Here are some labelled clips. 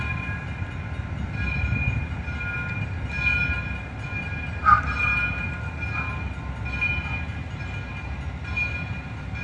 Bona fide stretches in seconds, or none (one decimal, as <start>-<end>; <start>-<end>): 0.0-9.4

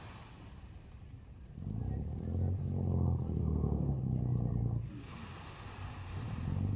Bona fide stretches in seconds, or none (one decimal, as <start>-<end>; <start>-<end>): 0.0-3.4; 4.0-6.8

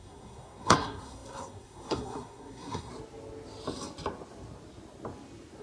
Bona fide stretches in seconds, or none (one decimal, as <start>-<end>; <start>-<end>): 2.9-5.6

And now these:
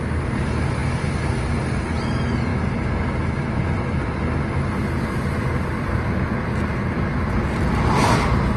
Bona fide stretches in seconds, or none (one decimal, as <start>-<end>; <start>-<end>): 0.0-8.6